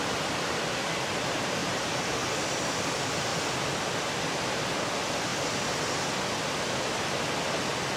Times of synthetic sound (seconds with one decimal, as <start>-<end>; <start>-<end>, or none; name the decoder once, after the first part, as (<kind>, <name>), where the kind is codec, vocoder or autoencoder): 1.6-2.3 (vocoder, BigVGAN v2)